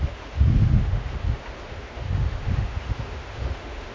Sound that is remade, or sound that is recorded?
remade